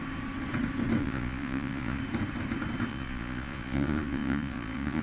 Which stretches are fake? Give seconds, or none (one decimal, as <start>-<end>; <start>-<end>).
1.0-2.0; 2.9-5.0